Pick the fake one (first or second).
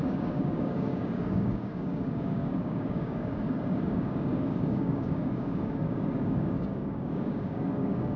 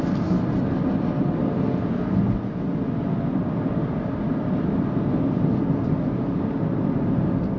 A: first